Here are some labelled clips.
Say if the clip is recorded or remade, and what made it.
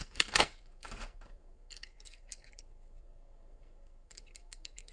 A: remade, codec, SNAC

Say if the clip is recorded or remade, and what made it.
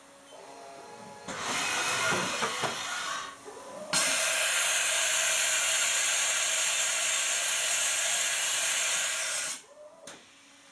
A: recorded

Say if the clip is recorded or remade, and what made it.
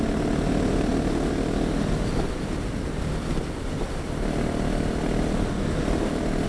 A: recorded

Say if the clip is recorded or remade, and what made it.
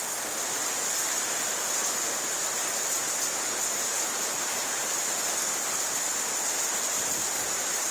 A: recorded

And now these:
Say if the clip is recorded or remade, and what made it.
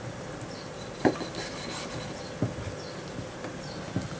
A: recorded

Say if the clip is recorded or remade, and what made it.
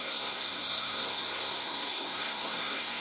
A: remade, codec, SNAC